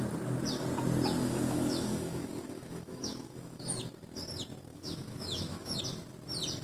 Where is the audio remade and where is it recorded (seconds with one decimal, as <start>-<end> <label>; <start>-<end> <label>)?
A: 0.0-1.2 recorded; 1.2-3.8 remade; 3.8-4.7 recorded; 4.7-5.8 remade; 5.8-6.6 recorded